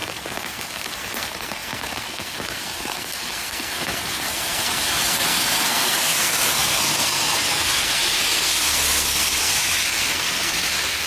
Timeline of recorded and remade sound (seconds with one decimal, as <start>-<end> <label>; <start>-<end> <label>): 0.0-11.1 remade